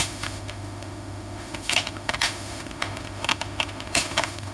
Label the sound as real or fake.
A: fake